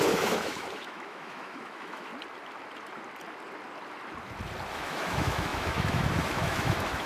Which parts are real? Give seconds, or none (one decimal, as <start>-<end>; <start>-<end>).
2.1-4.7